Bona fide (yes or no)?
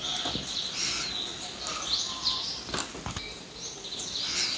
yes